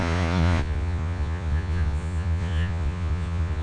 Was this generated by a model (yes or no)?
yes